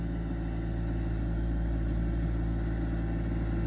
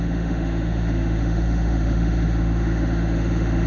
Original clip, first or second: first